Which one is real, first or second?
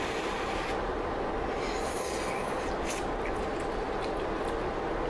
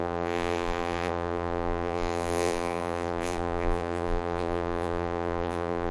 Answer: first